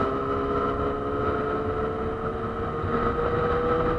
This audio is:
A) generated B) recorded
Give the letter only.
B